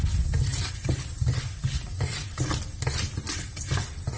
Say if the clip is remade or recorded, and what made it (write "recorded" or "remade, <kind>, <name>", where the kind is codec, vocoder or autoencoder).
recorded